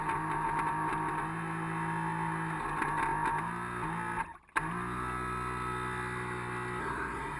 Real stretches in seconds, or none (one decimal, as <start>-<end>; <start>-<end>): 0.0-6.8